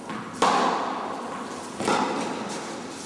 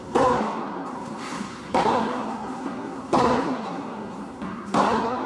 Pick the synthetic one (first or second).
second